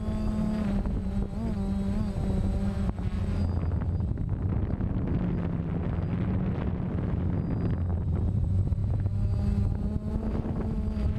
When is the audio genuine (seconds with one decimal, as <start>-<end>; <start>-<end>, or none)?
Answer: 0.0-7.9; 8.4-11.2